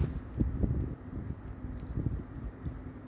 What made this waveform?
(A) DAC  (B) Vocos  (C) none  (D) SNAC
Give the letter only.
C